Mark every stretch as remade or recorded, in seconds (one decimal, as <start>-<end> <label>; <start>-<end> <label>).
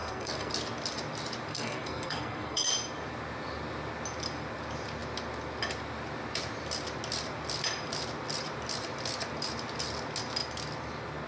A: 0.0-0.5 remade; 0.5-1.5 recorded; 1.5-2.7 remade; 2.7-11.3 recorded